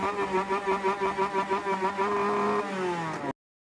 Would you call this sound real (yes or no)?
yes